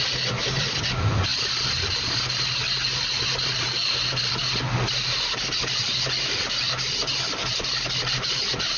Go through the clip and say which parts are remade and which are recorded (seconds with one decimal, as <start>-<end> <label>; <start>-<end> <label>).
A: 0.0-8.8 recorded